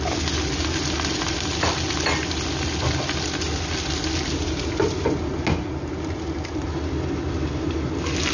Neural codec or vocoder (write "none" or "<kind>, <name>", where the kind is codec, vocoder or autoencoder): none